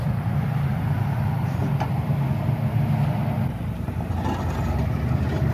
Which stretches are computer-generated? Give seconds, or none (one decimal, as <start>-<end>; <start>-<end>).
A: 0.0-1.6; 4.9-5.5